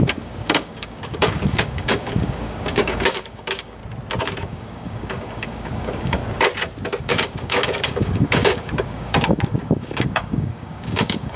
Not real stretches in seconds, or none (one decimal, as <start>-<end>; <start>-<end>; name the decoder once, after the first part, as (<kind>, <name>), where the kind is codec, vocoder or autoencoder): 0.0-3.8 (codec, DAC); 4.4-6.2; 7.0-11.4